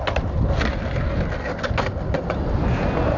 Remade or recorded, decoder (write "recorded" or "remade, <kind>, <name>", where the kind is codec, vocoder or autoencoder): recorded